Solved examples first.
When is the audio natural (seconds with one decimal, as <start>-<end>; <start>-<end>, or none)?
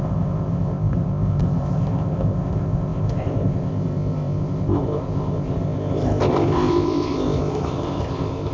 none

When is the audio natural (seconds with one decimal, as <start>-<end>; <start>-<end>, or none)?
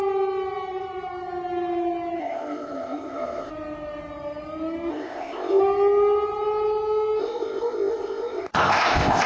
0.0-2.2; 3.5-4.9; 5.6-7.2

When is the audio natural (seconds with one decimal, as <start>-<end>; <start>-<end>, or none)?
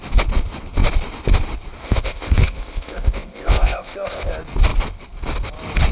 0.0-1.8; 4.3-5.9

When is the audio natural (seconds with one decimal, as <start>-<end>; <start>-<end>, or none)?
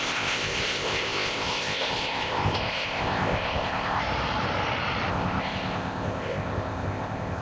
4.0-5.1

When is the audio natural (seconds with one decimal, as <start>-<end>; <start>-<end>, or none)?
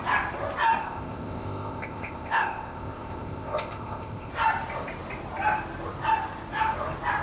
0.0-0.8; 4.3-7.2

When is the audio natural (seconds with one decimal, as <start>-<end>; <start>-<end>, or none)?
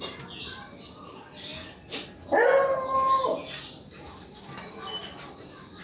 0.0-5.8